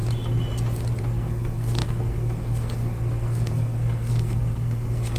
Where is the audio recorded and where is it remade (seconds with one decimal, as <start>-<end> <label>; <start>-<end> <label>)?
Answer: 0.0-1.0 recorded; 1.0-5.2 remade